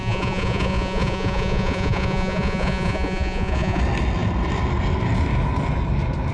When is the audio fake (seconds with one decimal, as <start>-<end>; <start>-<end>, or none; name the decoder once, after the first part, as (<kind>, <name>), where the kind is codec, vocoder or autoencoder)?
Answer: 0.0-3.8 (vocoder, Vocos)